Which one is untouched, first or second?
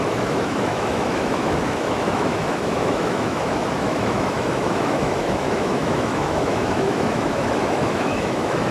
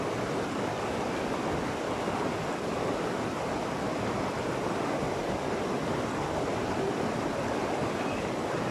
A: second